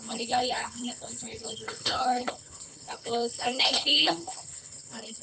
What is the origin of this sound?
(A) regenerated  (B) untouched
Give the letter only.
A